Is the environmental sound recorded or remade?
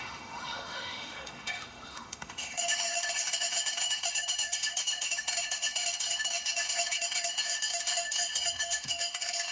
remade